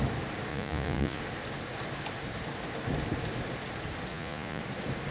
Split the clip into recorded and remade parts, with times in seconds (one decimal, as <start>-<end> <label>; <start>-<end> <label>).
0.0-0.5 recorded; 0.5-1.2 remade; 1.2-4.1 recorded; 4.1-4.6 remade; 4.6-5.1 recorded